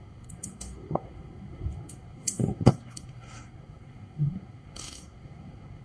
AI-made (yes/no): yes